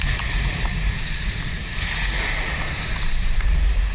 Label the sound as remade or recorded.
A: remade